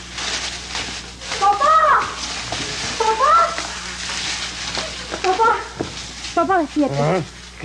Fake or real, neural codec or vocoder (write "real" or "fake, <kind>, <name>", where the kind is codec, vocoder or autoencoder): real